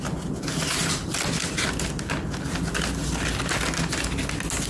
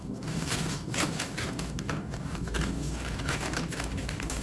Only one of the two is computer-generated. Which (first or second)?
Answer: second